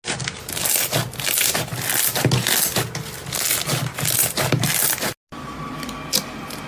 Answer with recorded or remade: recorded